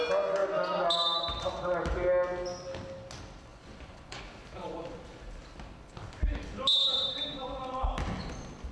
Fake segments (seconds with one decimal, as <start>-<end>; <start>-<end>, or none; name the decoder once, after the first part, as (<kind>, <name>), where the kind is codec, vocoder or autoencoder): 3.5-4.2 (vocoder, Vocos)

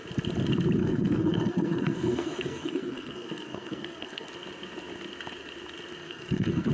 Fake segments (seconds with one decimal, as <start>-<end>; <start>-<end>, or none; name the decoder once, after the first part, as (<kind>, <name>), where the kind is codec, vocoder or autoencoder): 0.8-4.3 (codec, SNAC); 6.0-6.7

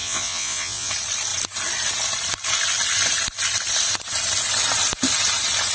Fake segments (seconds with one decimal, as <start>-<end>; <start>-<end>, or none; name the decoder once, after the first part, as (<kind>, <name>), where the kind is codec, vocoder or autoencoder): 0.0-0.9 (vocoder, Vocos)

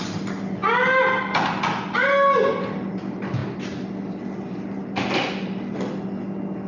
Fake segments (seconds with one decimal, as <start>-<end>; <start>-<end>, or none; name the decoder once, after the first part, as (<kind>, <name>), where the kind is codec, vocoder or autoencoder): none

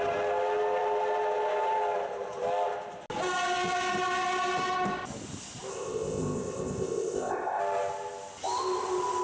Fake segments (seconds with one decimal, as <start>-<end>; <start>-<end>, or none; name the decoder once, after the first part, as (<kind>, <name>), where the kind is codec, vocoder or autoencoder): 5.7-7.6 (codec, ZipCodec)